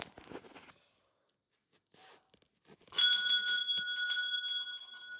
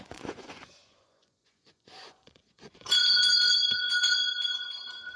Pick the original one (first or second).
first